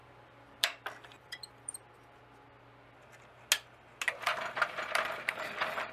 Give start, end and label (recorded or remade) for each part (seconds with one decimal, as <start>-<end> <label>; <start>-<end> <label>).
0.0-1.5 remade; 1.5-5.9 recorded